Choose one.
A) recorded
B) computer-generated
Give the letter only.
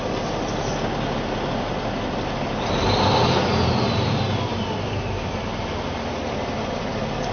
A